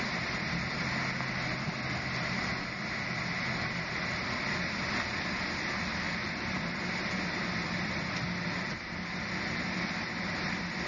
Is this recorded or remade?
recorded